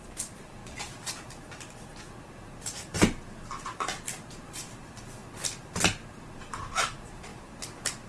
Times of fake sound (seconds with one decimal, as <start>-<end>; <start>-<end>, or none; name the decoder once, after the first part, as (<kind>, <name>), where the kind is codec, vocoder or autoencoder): 0.0-0.6 (vocoder, BigVGAN v2); 4.3-5.2; 6.3-7.3